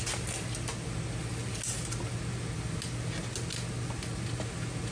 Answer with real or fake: real